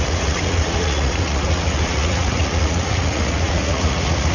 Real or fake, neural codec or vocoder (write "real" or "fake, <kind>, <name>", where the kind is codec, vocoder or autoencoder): fake, vocoder, Vocos